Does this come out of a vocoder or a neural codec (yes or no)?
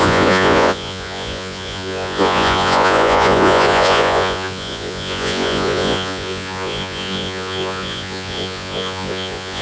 yes